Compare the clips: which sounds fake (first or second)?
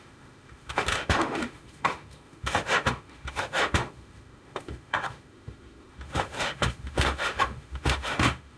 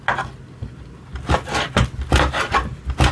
first